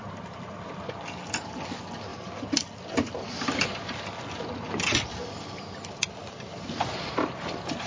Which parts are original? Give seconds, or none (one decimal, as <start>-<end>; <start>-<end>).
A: 0.6-2.1; 2.6-5.1